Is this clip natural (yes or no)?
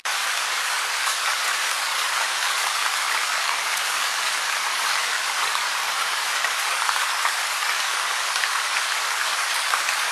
no